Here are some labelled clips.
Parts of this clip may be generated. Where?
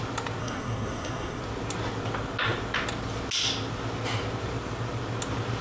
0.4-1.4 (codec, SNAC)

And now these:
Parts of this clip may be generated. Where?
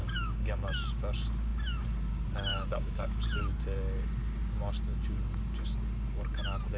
0.0-0.7 (codec, DAC); 2.5-3.4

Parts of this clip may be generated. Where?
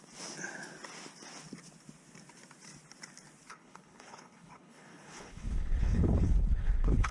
3.5-7.1 (codec, HILCodec)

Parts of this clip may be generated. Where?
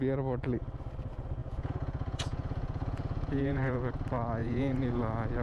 1.4-3.9 (vocoder, Vocos); 4.4-5.0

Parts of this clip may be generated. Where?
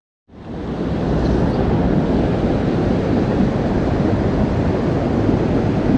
none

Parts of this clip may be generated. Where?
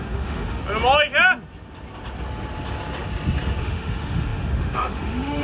0.0-0.6 (autoencoder, DAC-VAE); 3.6-5.4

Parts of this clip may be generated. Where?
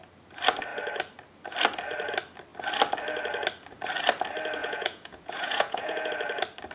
4.6-6.1 (vocoder, Vocos)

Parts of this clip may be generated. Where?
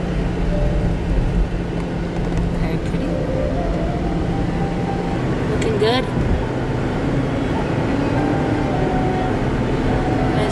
none